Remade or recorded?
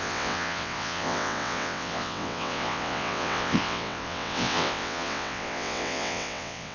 remade